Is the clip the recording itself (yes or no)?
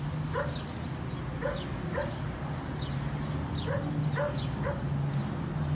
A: yes